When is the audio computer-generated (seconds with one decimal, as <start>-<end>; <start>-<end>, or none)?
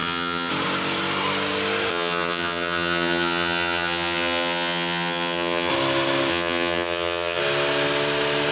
0.0-0.5; 1.9-5.7; 6.3-7.4